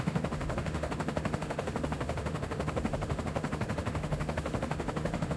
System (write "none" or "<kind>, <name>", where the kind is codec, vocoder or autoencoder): autoencoder, DAC-VAE